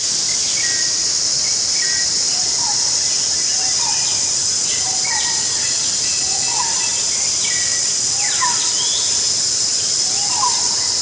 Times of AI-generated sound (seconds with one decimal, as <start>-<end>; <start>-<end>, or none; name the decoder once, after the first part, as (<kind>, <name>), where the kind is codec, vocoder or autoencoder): none

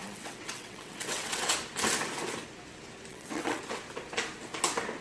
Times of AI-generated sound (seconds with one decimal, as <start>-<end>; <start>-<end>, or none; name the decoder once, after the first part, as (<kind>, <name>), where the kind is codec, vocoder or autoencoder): 0.0-1.5 (vocoder, WaveNeXt); 3.1-3.6

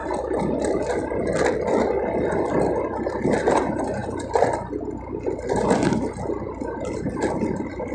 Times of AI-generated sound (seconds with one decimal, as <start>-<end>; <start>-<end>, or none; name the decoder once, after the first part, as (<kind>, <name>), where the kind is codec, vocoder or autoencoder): none

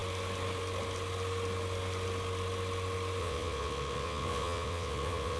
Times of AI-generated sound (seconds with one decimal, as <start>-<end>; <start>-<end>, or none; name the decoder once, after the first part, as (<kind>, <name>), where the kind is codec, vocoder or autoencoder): 3.2-5.4 (vocoder, WaveNeXt)

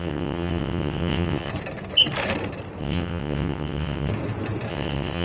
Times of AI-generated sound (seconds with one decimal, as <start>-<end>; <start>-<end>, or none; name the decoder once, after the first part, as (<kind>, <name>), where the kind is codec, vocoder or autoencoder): 0.0-1.5 (vocoder, WaveNeXt); 2.8-4.1; 4.7-5.2